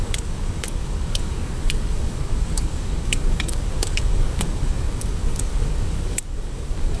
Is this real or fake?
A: fake